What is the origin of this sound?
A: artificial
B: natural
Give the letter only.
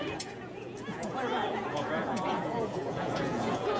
A